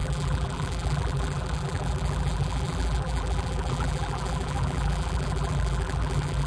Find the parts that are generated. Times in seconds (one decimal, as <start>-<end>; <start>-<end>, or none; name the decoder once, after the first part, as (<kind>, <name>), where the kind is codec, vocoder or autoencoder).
0.0-6.5 (vocoder, BigVGAN v2)